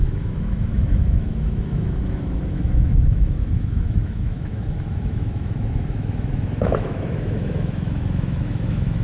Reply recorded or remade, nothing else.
remade